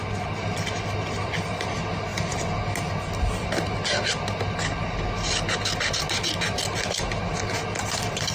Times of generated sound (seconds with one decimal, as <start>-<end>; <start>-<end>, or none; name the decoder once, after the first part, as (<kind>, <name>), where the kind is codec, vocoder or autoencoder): none